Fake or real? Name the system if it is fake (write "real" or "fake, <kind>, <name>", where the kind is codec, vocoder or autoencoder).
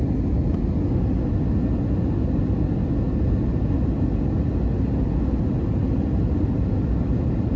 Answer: real